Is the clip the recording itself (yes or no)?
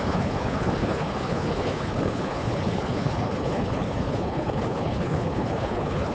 no